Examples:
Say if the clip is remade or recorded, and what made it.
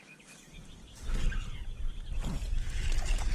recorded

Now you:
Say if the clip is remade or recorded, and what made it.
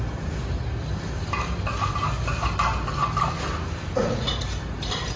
recorded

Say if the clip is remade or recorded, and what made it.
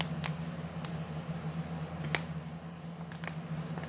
recorded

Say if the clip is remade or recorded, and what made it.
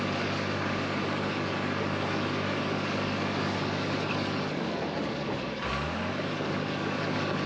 remade, codec, DAC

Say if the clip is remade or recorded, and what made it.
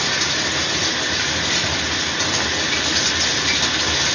recorded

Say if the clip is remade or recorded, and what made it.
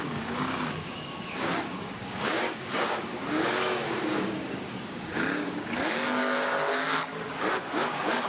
remade, codec, DAC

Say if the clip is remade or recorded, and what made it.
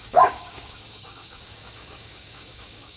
remade, codec, DAC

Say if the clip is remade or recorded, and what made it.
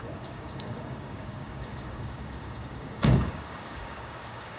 remade, codec, DAC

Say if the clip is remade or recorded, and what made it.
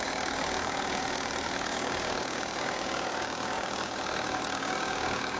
remade, codec, DAC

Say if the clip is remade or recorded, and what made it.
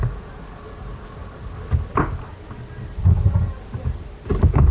recorded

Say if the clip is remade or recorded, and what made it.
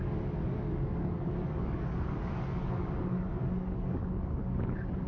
remade, codec, DAC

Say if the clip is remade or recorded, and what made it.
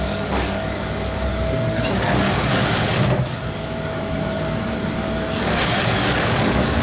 remade, codec, DAC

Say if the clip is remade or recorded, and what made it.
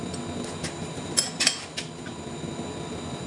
recorded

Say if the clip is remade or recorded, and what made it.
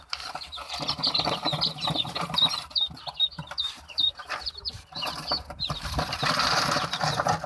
recorded